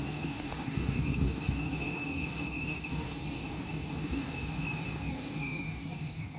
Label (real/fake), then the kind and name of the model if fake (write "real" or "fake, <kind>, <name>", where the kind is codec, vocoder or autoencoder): fake, codec, DAC